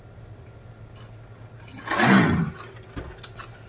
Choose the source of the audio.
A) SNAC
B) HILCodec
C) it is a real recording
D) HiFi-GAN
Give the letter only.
C